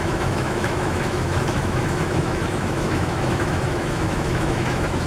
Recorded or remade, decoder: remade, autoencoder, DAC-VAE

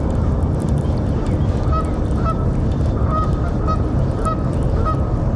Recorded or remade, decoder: recorded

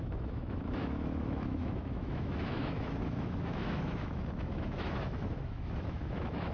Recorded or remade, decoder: remade, autoencoder, DAC-VAE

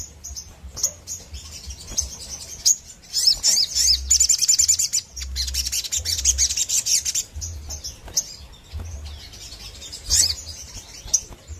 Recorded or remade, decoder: recorded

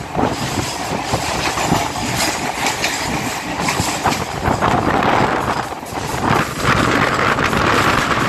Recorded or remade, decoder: recorded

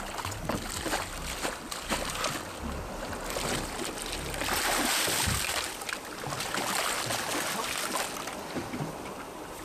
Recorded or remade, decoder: recorded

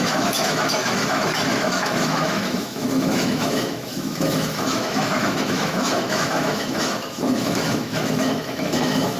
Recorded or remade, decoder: remade, autoencoder, DAC-VAE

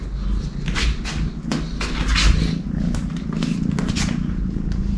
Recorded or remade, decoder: recorded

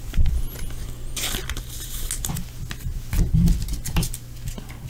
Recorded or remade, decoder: recorded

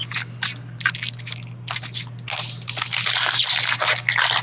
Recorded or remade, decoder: recorded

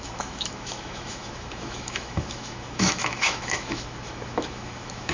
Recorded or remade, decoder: remade, autoencoder, DAC-VAE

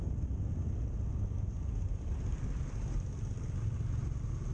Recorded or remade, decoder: recorded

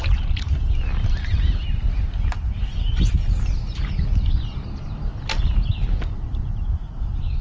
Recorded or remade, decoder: recorded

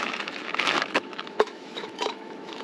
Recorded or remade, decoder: remade, autoencoder, DAC-VAE